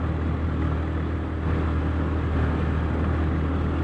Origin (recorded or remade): recorded